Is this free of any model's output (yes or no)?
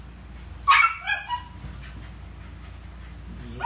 yes